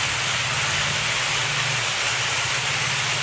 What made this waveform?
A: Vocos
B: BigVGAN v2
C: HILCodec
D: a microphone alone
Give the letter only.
D